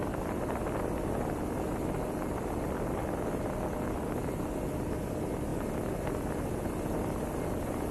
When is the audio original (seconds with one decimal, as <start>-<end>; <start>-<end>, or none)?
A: 0.0-7.9